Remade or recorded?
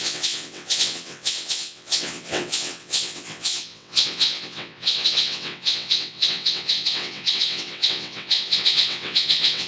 remade